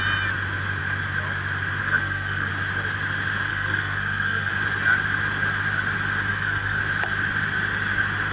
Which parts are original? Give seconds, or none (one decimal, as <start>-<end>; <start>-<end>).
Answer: 0.0-1.8; 2.5-3.5; 4.5-6.3; 6.8-8.3